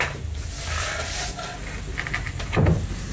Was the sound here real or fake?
real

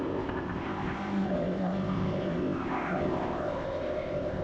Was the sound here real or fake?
fake